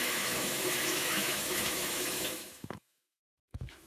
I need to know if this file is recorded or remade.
remade